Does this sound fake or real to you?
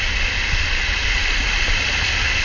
real